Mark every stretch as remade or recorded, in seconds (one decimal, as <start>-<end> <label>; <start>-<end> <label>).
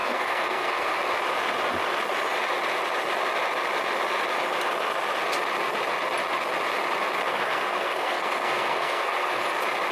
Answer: 0.0-1.0 remade; 1.0-7.3 recorded; 7.3-9.4 remade; 9.4-9.9 recorded